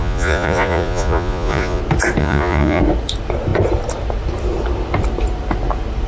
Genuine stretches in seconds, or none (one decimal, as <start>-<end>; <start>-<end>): 1.8-2.2; 2.8-6.1

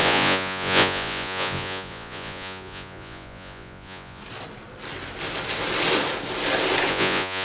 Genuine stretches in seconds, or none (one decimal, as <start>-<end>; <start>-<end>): 4.2-6.9

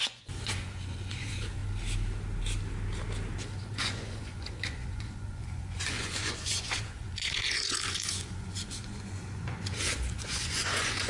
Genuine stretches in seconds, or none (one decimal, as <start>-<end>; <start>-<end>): 1.6-3.6

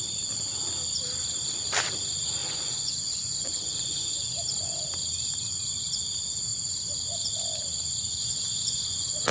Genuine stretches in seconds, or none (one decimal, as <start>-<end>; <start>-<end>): 0.0-2.4; 4.3-8.2

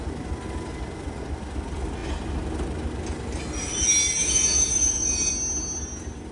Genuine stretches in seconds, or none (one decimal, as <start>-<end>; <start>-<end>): 0.0-4.2; 5.3-6.3

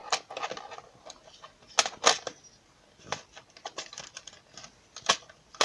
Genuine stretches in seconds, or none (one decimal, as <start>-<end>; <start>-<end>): 0.0-5.6